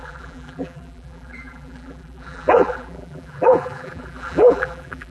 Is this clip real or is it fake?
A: fake